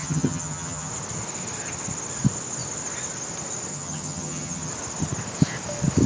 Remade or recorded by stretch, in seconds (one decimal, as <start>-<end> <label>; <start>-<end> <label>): 0.0-0.9 remade; 0.9-3.7 recorded; 3.7-4.7 remade; 4.7-6.1 recorded